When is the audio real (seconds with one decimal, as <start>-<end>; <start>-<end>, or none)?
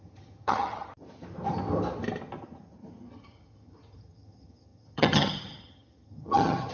0.9-3.1